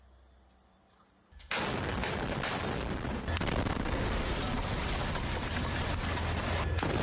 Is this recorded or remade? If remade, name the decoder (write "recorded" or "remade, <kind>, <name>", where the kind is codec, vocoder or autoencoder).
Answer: recorded